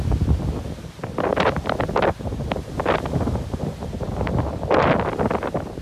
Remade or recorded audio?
recorded